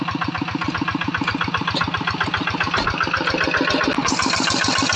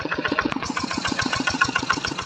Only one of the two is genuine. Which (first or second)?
first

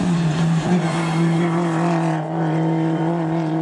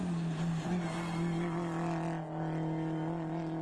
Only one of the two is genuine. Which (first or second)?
second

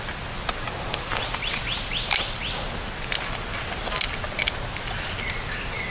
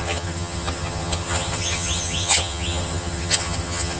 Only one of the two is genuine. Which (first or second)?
first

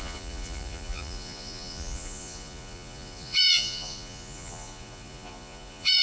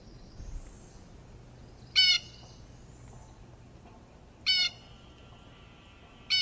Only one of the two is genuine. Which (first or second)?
second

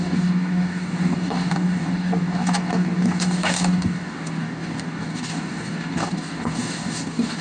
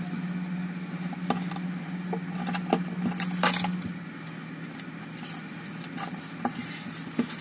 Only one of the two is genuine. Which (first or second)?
second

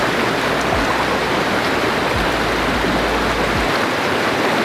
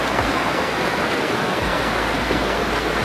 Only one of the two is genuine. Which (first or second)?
first